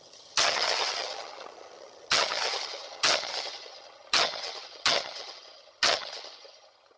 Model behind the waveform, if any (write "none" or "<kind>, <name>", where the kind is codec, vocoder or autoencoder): vocoder, HiFi-GAN